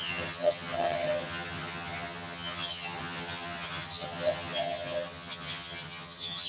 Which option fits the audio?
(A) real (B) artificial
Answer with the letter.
B